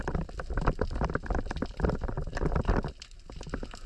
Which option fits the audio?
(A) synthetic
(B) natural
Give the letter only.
B